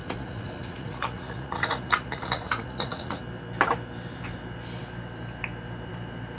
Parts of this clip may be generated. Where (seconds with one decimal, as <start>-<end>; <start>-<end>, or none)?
0.0-3.2